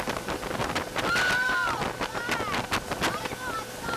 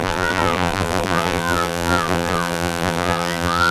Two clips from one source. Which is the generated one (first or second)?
second